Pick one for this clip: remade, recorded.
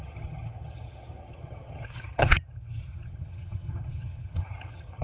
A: remade